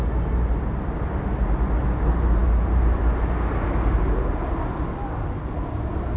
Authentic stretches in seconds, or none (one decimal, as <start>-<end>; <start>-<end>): 0.0-6.2